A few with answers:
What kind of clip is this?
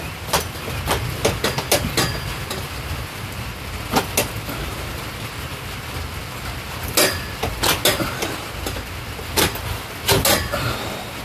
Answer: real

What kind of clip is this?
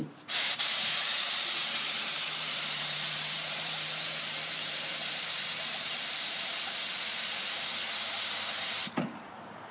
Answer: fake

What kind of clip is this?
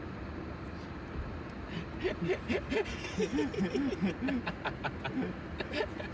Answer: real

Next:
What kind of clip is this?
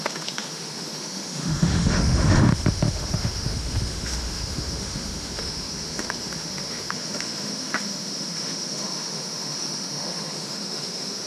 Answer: fake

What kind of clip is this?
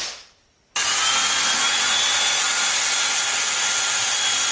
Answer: real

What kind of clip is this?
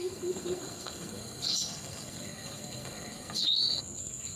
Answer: fake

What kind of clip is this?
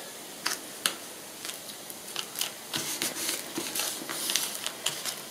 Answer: real